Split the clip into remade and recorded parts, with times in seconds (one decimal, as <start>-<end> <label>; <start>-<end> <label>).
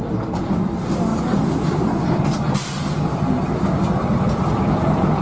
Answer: 0.0-5.2 recorded